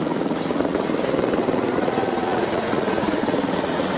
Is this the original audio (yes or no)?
no